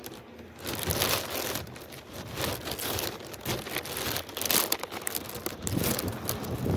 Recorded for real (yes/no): yes